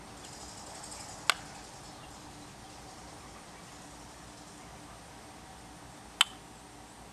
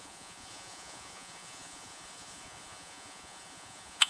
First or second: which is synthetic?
second